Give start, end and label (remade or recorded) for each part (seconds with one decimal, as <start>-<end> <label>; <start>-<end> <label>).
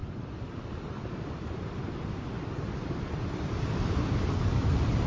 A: 0.0-5.1 remade